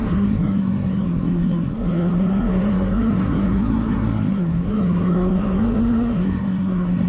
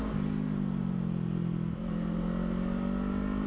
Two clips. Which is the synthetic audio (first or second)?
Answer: first